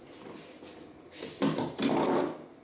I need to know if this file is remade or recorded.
recorded